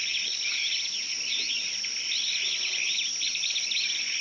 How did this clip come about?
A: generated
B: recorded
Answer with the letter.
B